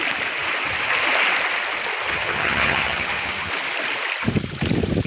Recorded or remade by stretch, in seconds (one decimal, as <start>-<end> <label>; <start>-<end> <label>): 0.0-2.1 recorded; 2.1-3.5 remade; 3.5-5.1 recorded